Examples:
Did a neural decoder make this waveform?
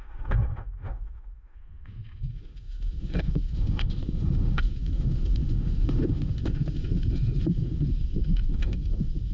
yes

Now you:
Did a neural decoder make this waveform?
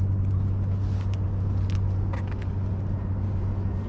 no